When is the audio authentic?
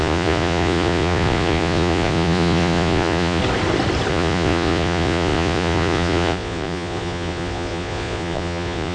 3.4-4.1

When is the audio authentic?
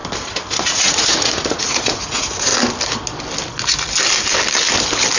0.0-0.6; 2.5-5.2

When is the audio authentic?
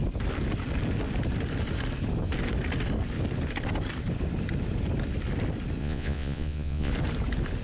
0.0-5.8; 6.9-7.6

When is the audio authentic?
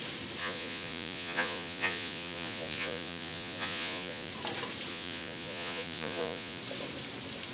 0.0-0.4; 4.3-4.9; 6.6-7.5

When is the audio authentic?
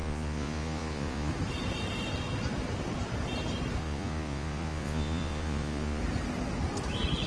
1.3-3.8; 6.0-7.3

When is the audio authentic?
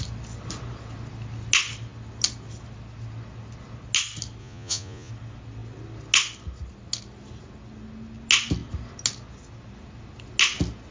0.0-4.4; 5.1-10.9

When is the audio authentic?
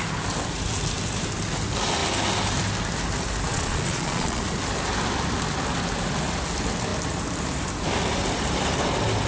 0.0-3.5; 4.4-9.3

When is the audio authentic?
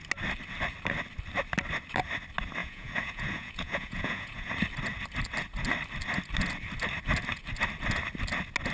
0.0-2.6; 4.5-8.7